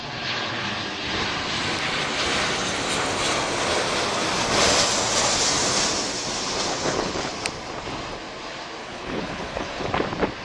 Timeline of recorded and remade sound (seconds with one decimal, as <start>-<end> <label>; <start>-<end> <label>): 0.0-6.7 recorded; 6.7-7.3 remade; 7.3-8.8 recorded; 8.8-9.9 remade; 9.9-10.4 recorded